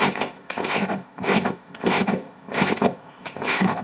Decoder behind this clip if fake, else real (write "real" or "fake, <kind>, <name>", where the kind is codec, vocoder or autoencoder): fake, codec, ZipCodec